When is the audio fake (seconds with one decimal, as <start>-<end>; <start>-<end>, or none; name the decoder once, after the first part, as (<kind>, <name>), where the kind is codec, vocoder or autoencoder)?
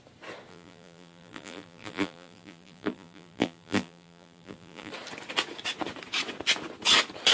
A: 0.5-4.9 (vocoder, BigVGAN v2)